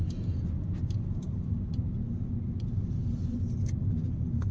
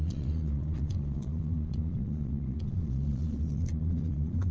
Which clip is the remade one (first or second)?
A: second